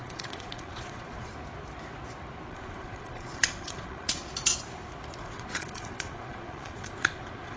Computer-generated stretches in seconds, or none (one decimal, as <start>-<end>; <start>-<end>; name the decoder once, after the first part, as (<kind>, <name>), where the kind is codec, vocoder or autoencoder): 0.0-1.3 (vocoder, Vocos); 2.5-4.2; 5.2-7.6